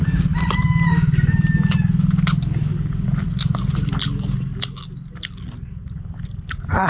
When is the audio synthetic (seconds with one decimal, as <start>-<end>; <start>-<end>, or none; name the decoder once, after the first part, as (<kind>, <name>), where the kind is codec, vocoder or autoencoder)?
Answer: none